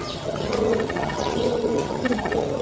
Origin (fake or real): fake